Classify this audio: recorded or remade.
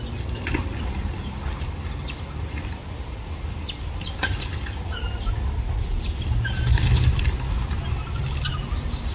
recorded